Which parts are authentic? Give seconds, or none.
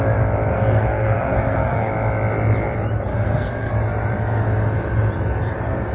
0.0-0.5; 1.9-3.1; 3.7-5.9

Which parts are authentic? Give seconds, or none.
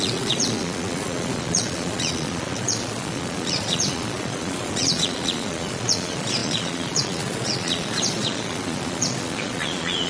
none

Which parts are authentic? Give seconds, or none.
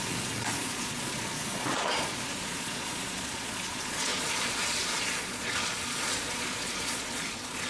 none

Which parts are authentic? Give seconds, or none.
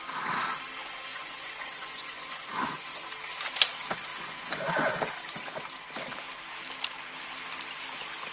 0.0-1.1; 3.1-4.1; 4.9-8.3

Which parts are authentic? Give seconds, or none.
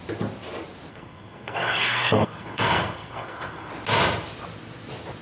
0.0-0.9; 3.7-5.2